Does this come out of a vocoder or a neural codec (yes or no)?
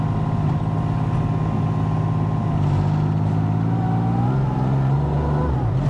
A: no